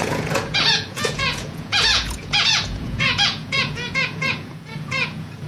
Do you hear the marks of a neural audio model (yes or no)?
yes